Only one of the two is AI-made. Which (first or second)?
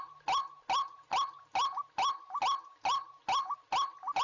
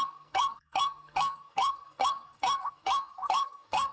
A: second